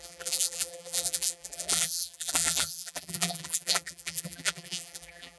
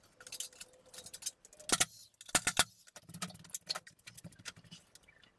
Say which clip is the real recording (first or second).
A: second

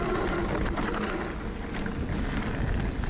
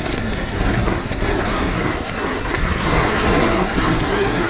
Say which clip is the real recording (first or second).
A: first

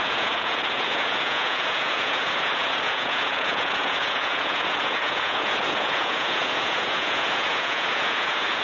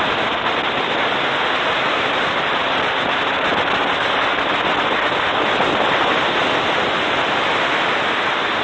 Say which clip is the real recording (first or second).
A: second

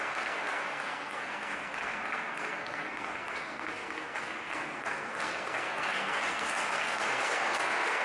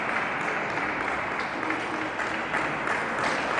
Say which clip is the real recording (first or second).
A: second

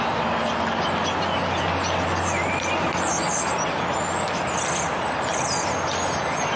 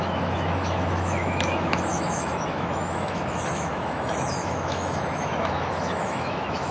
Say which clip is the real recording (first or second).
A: first